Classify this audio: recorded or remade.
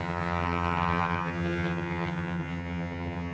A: remade